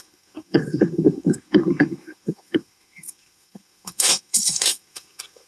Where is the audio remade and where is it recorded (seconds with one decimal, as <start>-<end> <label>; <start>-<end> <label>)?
0.0-5.5 remade